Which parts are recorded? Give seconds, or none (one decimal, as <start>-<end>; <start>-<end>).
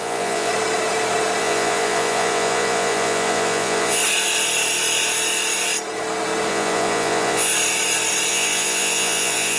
0.5-1.4; 4.0-6.5; 7.5-8.3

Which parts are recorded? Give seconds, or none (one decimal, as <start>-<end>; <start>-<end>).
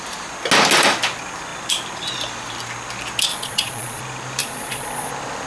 0.0-3.3; 4.0-4.4; 5.1-5.5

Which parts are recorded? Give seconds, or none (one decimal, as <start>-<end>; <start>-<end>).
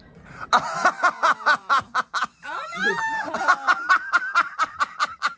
3.5-4.7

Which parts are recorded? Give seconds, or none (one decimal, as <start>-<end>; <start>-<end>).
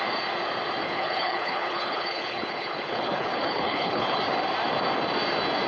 0.0-0.8; 4.2-5.7